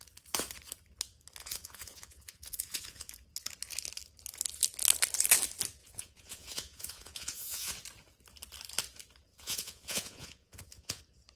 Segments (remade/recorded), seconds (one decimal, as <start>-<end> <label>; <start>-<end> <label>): 0.0-1.4 recorded; 1.4-3.1 remade; 3.1-5.8 recorded; 5.8-7.7 remade; 7.7-9.3 recorded; 9.3-11.0 remade; 11.0-11.4 recorded